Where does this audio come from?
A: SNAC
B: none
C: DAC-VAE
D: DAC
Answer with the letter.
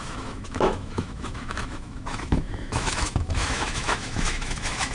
C